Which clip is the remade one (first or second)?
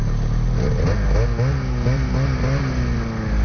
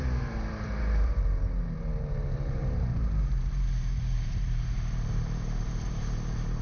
second